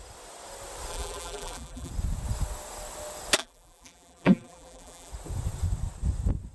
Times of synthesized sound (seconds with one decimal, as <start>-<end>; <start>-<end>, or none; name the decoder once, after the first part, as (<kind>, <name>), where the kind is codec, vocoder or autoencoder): 0.9-1.9 (vocoder, BigVGAN v2); 3.4-5.1